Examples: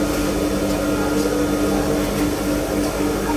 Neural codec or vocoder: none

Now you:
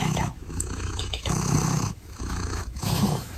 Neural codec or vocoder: autoencoder, DAC-VAE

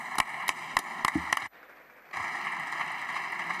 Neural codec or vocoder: none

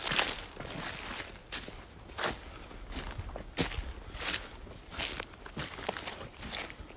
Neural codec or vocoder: none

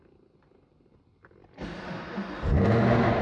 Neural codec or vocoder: none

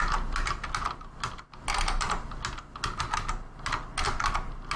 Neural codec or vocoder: none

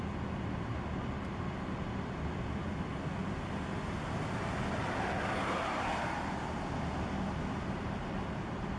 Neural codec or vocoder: none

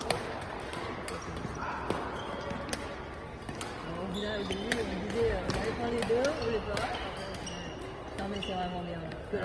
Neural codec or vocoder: none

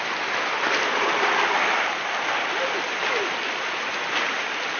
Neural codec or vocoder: vocoder, BigVGAN v2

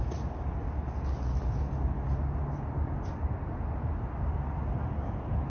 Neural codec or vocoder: none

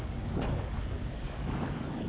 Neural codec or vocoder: codec, DAC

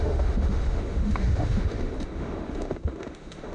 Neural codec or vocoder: autoencoder, DAC-VAE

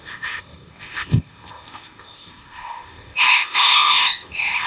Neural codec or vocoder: codec, ZipCodec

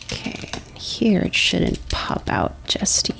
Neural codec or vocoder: none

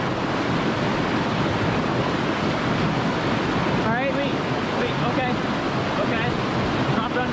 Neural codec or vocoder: none